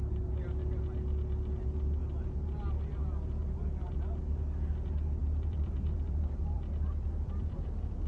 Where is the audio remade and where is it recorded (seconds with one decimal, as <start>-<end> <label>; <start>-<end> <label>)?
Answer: 0.0-5.2 recorded; 5.2-8.1 remade